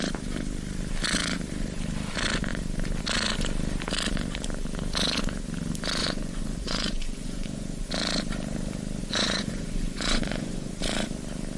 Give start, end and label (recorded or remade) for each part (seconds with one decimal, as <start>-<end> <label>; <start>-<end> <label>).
0.0-6.0 recorded; 6.0-7.9 remade; 7.9-9.0 recorded; 9.0-10.7 remade; 10.7-11.6 recorded